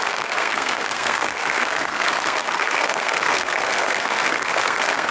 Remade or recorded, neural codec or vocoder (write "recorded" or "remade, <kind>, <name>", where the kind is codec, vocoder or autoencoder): remade, codec, SNAC